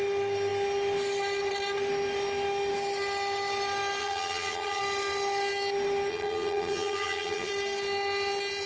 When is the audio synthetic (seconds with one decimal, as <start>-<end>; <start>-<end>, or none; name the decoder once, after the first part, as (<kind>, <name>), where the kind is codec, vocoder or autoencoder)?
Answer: 4.0-4.8 (vocoder, HiFi-GAN); 6.1-7.5